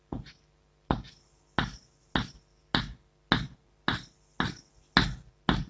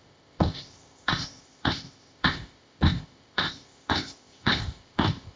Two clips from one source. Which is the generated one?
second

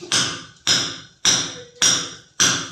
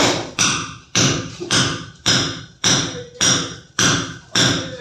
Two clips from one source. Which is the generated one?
second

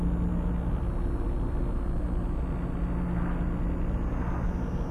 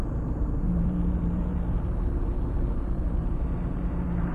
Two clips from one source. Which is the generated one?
second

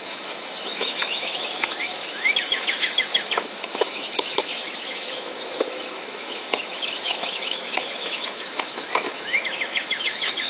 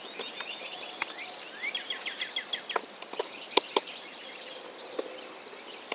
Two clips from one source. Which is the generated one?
first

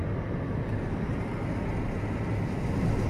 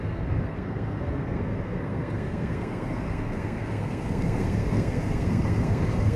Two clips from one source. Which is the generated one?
second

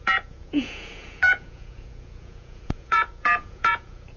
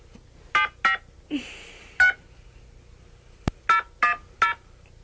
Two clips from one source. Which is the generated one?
first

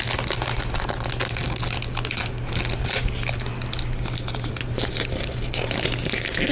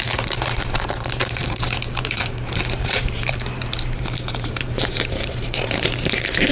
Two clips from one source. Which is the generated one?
second